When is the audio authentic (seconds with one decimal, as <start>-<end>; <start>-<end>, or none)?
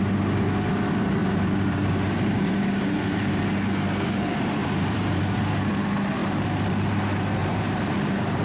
0.0-1.2; 3.4-4.6; 5.7-6.2; 6.7-7.4